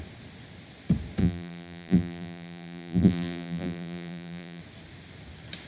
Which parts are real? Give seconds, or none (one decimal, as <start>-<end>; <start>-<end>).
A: 0.0-1.2; 4.6-5.7